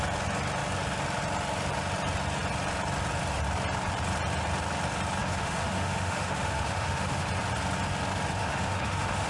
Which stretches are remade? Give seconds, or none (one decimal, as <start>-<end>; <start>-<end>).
5.2-7.3; 8.4-9.3